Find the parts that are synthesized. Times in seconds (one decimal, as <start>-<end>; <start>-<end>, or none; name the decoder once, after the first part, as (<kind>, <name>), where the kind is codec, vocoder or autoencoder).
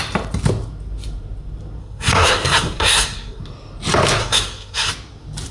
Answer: 1.8-3.4 (codec, SNAC); 4.2-4.9